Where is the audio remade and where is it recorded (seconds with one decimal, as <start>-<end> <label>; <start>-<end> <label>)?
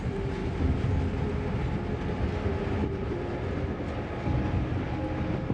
0.0-0.4 recorded; 0.4-1.0 remade; 1.0-2.8 recorded; 2.8-3.5 remade; 3.5-5.5 recorded